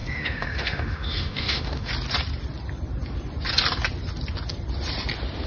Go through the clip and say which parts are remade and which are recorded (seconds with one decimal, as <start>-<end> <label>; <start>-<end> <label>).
0.0-1.9 remade; 1.9-5.5 recorded